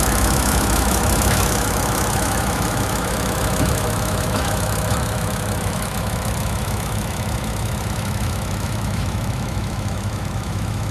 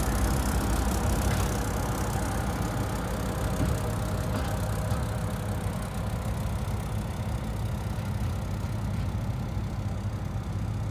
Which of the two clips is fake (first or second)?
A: first